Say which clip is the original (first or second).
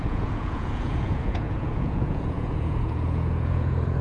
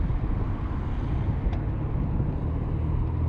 second